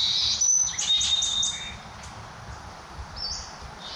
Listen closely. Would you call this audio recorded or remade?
recorded